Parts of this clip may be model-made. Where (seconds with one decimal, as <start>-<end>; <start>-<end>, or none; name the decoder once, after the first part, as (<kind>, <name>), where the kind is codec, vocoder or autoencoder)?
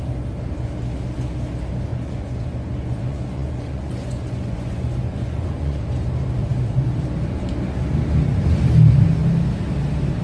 1.9-5.8 (vocoder, Vocos)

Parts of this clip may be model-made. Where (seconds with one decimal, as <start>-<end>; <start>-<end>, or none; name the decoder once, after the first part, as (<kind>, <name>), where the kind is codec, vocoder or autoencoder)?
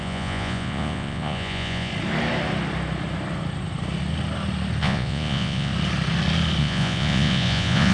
0.0-1.9 (vocoder, Vocos); 4.8-5.7; 6.6-7.9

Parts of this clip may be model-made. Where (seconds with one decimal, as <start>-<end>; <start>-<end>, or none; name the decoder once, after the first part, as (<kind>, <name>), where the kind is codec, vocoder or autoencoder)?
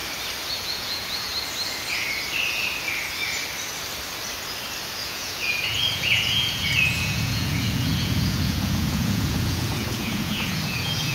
0.5-1.3 (vocoder, Vocos); 4.9-11.1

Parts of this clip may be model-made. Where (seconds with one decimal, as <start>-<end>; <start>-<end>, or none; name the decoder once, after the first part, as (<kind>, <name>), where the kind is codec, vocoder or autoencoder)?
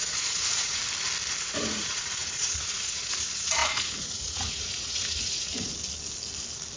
0.0-0.8 (vocoder, Vocos); 1.4-5.7